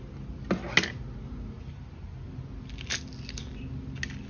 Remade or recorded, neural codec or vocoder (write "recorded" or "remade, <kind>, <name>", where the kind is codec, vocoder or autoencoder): recorded